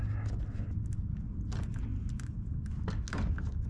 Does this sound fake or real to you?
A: real